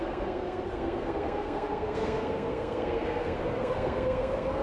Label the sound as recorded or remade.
remade